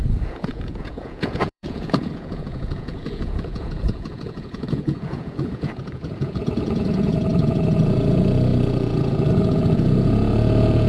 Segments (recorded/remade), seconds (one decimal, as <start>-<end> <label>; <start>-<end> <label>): 0.0-10.9 remade